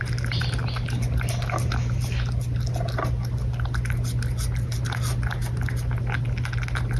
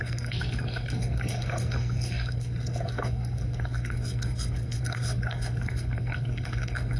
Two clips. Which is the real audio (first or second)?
first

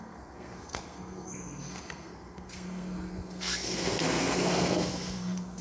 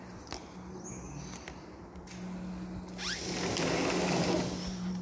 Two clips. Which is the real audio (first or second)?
second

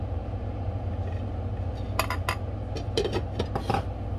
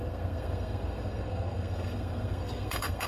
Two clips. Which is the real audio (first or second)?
first